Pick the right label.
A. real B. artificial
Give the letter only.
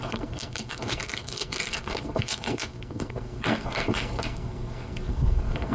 B